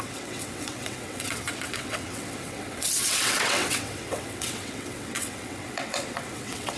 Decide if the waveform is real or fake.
fake